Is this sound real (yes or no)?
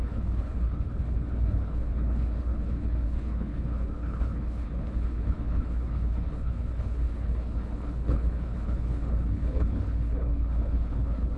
no